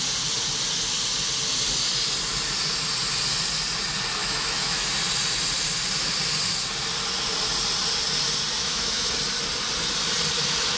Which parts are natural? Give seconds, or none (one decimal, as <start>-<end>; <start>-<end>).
0.0-4.2; 4.9-8.6; 9.1-10.8